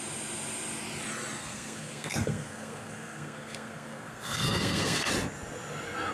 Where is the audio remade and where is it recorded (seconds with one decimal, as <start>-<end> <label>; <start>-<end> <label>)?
0.0-1.4 recorded; 1.4-5.1 remade; 5.1-6.1 recorded